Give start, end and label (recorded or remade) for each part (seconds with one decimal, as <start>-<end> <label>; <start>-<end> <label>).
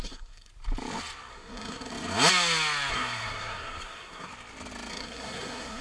0.0-0.5 remade; 0.5-1.3 recorded; 1.3-1.9 remade; 1.9-2.9 recorded; 2.9-4.3 remade; 4.3-4.9 recorded; 4.9-5.8 remade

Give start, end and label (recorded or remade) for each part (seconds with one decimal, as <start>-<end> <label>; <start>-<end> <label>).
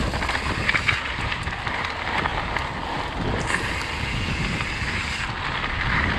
0.0-6.2 recorded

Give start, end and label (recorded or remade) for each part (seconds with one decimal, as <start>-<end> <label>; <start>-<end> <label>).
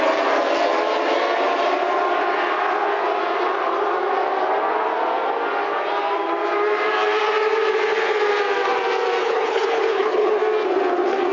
0.0-9.2 recorded; 9.2-10.4 remade; 10.4-11.3 recorded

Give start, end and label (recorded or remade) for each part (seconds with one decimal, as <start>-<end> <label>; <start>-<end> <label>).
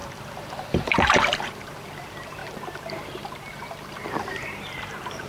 0.0-5.3 remade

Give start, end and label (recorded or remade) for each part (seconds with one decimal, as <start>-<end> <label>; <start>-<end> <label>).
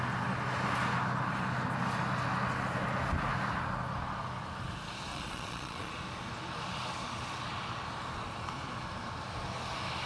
0.0-5.1 recorded; 5.1-5.9 remade; 5.9-10.1 recorded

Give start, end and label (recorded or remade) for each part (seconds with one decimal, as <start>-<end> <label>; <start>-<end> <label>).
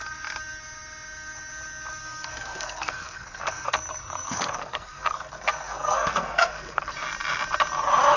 0.0-2.0 recorded; 2.0-6.8 remade; 6.8-8.2 recorded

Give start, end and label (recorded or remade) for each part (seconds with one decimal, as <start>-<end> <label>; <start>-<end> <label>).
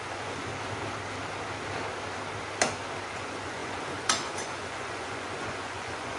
0.0-0.5 remade; 0.5-3.1 recorded; 3.1-6.2 remade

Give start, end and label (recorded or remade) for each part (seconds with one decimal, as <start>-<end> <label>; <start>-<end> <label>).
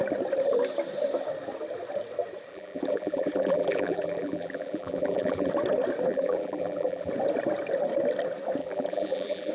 0.0-2.5 recorded; 2.5-5.5 remade; 5.5-6.1 recorded; 6.1-7.1 remade; 7.1-8.6 recorded; 8.6-9.5 remade